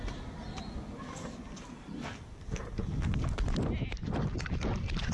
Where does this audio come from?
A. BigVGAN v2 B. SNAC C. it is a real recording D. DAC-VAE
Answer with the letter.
C